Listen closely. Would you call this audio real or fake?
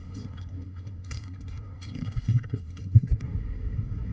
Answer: fake